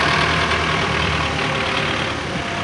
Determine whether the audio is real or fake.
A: real